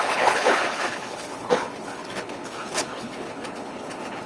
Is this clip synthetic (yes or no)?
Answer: yes